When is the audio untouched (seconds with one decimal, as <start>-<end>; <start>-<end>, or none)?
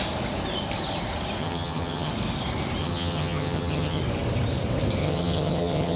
0.0-1.4; 2.1-2.8; 4.0-5.0